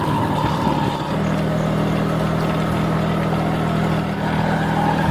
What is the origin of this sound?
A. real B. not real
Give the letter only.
A